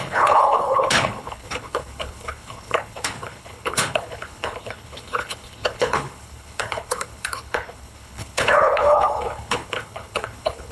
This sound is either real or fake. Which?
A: fake